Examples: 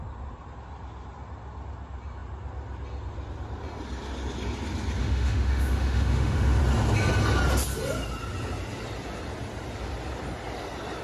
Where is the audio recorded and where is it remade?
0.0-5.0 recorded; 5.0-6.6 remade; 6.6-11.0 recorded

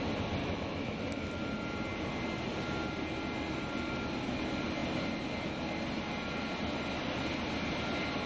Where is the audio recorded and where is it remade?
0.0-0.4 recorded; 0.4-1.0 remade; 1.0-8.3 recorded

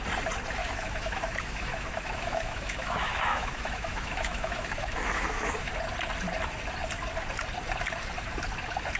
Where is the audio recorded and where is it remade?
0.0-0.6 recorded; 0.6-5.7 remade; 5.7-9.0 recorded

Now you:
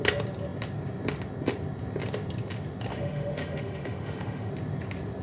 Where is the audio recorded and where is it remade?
0.0-2.9 recorded; 2.9-4.5 remade; 4.5-5.2 recorded